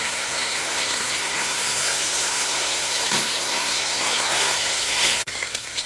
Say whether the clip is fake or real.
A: fake